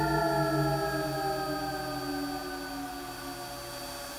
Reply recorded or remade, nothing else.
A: recorded